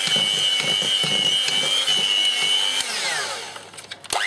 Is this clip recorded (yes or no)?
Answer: yes